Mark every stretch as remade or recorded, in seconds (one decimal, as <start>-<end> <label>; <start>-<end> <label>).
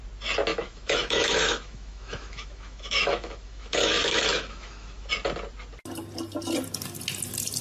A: 0.0-0.5 recorded; 0.5-5.1 remade; 5.1-7.6 recorded